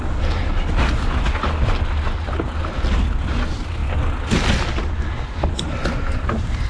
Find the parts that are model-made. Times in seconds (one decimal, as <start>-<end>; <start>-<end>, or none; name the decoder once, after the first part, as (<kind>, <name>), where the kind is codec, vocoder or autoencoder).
none